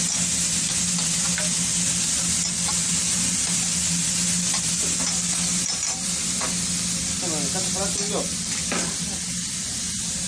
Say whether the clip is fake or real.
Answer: real